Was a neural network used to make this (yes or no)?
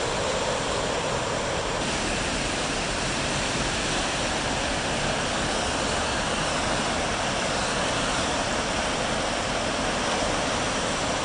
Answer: no